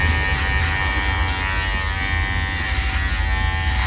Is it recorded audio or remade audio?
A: recorded